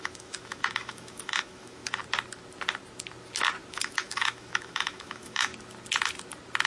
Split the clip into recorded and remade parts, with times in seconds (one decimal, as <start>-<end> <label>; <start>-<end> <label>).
0.0-2.0 remade; 2.0-3.7 recorded; 3.7-5.5 remade; 5.5-6.7 recorded